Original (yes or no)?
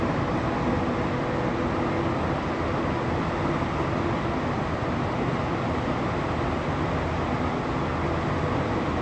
yes